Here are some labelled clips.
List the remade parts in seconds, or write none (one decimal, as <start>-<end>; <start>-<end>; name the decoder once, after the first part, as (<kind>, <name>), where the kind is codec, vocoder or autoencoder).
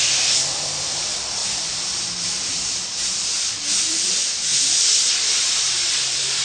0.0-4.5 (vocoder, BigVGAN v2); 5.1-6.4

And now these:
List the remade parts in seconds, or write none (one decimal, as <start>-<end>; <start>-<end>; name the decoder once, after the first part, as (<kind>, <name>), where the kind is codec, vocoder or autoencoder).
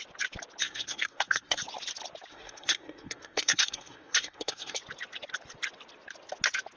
0.6-1.6 (codec, SNAC); 2.3-4.8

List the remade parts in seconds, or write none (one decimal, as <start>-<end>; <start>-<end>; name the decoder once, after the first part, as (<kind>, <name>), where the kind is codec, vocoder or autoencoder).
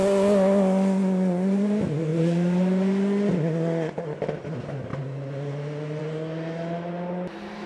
none